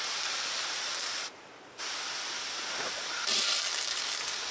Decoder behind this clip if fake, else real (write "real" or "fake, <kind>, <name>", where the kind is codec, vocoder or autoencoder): real